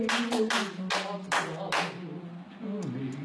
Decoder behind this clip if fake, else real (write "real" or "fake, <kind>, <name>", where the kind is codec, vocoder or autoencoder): real